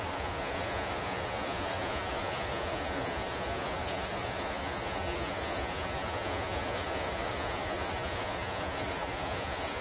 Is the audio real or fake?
fake